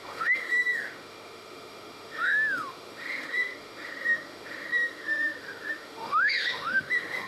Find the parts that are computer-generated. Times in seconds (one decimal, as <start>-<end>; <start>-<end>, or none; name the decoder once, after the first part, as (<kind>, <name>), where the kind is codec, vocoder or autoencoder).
0.0-7.3 (autoencoder, DAC-VAE)